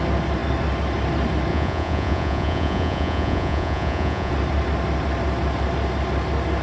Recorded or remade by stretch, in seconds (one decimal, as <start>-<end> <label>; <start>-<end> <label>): 0.0-1.5 recorded; 1.5-4.3 remade; 4.3-6.6 recorded